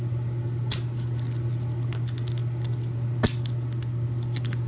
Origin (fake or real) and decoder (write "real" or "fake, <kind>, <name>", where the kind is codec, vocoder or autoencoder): real